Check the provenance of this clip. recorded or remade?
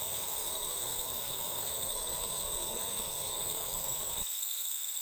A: remade